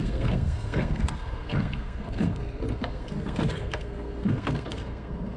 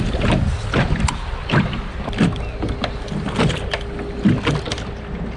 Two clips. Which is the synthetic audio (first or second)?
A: first